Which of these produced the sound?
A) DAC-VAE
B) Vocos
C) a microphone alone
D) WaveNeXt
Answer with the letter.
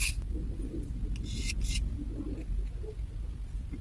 C